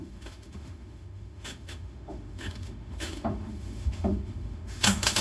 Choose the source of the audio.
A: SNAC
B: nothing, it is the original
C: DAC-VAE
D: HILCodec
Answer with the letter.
C